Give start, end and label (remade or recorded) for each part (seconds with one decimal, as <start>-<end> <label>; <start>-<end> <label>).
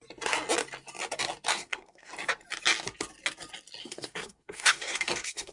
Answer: 0.0-1.5 recorded; 1.5-2.1 remade; 2.1-3.8 recorded; 3.8-5.5 remade